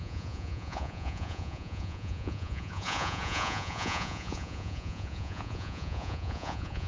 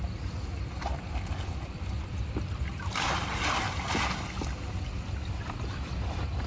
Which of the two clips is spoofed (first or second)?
first